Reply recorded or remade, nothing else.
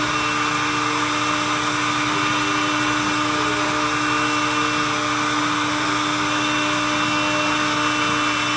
recorded